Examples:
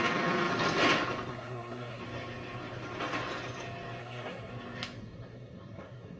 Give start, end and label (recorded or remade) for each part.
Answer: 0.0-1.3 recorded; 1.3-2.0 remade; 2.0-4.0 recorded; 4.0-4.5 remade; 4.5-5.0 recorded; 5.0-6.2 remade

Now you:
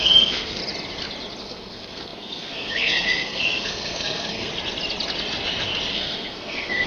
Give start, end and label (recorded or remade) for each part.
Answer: 0.0-0.6 remade; 0.6-1.4 recorded; 1.4-4.5 remade; 4.5-5.9 recorded; 5.9-6.9 remade

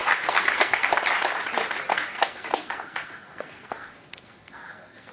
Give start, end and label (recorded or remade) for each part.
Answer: 0.0-0.9 remade; 0.9-1.9 recorded; 1.9-5.1 remade